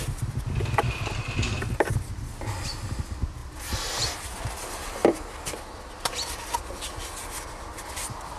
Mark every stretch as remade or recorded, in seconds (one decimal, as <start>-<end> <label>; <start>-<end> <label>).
0.0-8.4 recorded